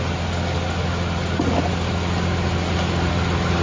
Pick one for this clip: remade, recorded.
recorded